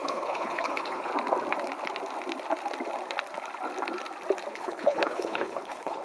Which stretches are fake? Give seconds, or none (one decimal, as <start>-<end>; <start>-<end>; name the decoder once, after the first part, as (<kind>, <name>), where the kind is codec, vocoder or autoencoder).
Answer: 0.0-1.1 (codec, HILCodec); 4.5-6.0